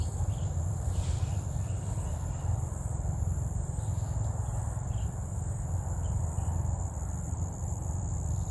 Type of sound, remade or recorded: recorded